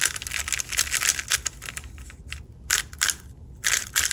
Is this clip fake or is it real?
real